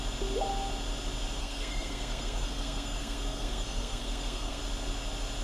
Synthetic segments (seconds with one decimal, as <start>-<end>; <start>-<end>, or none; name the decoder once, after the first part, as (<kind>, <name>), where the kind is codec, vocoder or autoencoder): 1.4-4.6 (codec, SNAC)